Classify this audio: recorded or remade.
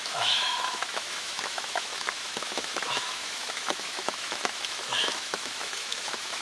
remade